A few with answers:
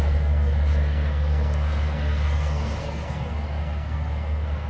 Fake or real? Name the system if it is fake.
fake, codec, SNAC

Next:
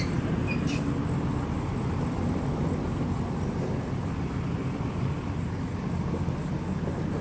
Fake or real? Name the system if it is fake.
real